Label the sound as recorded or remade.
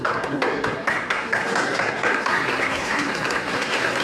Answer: remade